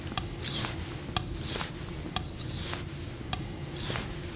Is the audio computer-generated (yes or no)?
no